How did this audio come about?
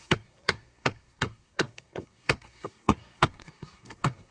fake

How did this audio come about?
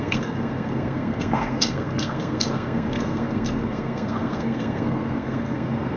fake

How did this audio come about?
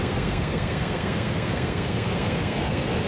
fake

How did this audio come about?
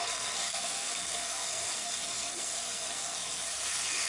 fake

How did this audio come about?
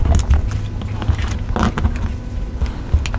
real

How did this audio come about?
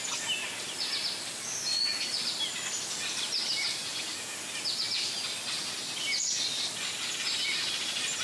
real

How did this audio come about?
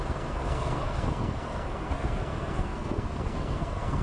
fake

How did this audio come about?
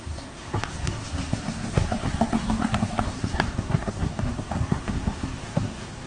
fake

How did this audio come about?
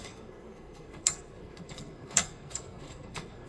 fake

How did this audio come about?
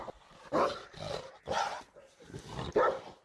real